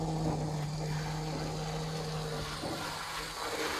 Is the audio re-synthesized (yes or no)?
no